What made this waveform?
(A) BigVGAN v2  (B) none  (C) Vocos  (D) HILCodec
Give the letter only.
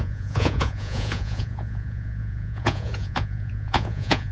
C